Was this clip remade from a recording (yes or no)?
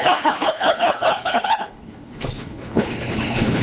yes